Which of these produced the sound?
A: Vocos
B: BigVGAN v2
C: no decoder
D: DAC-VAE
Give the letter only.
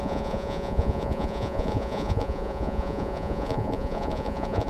A